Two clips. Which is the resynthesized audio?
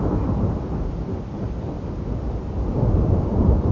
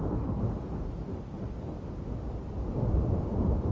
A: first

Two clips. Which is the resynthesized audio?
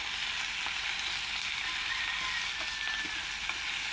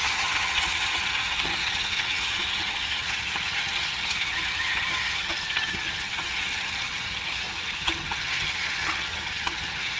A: second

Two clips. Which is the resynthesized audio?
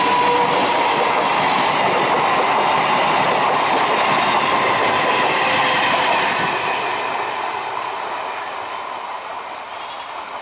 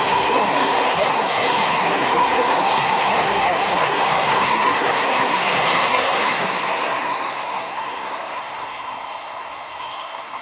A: second